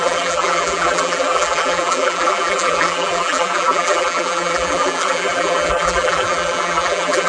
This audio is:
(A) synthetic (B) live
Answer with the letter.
A